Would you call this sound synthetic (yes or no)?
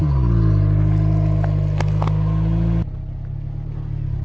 no